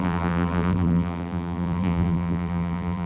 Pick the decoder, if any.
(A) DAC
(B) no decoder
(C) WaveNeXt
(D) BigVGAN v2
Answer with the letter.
D